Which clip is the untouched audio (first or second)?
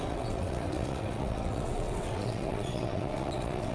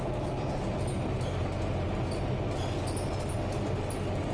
second